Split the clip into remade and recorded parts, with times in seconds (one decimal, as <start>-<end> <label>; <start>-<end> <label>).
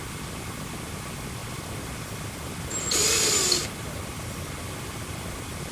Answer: 0.0-5.7 recorded